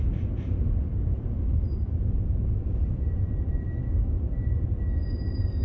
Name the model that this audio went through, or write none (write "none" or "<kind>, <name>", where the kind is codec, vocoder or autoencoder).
none